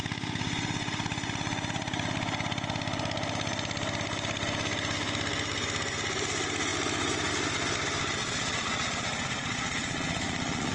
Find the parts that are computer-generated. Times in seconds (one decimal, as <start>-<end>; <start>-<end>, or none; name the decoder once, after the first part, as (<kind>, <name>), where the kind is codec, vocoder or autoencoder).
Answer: 8.2-10.7 (vocoder, Vocos)